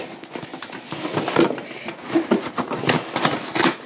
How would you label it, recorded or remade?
recorded